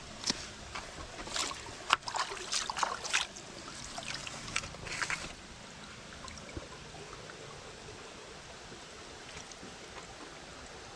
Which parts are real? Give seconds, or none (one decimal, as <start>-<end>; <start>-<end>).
0.0-11.0